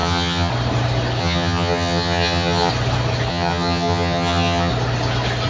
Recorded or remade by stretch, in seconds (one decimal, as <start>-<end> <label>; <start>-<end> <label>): 0.0-0.5 remade; 0.5-1.2 recorded; 1.2-2.7 remade; 2.7-3.3 recorded; 3.3-4.7 remade; 4.7-5.5 recorded